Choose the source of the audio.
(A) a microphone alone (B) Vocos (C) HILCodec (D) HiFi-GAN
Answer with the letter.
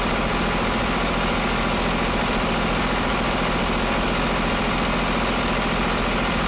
A